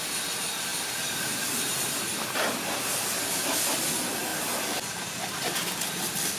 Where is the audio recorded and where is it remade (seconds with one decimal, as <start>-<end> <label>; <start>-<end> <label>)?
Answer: 0.0-6.4 remade